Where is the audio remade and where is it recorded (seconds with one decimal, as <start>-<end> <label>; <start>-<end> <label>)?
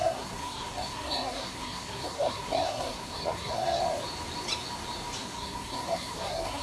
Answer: 0.0-3.8 remade; 3.8-5.2 recorded; 5.2-6.6 remade